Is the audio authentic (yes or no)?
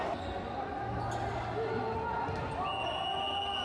yes